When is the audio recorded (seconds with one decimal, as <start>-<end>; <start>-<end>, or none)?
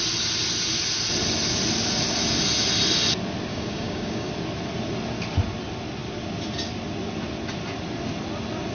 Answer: 0.0-3.5; 4.3-8.7